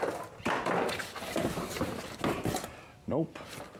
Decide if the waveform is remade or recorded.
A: recorded